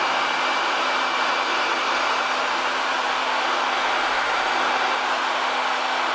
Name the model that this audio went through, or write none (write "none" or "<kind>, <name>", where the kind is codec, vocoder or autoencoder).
none